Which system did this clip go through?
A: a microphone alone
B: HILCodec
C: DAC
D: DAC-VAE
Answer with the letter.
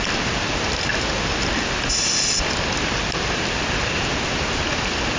A